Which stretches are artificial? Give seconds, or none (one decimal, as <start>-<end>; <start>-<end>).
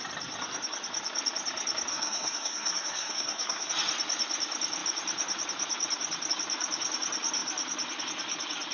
1.9-3.7